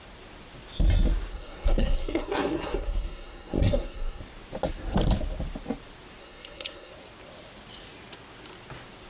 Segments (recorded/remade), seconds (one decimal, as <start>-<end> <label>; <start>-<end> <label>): 0.0-1.3 recorded; 1.3-4.2 remade; 4.2-6.2 recorded; 6.2-6.9 remade; 6.9-9.1 recorded